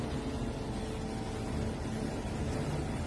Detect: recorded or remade recorded